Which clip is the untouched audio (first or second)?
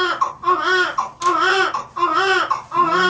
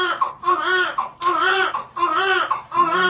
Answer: first